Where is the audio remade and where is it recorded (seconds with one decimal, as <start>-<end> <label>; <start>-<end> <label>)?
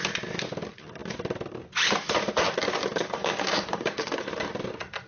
0.0-3.2 recorded; 3.2-4.2 remade; 4.2-5.1 recorded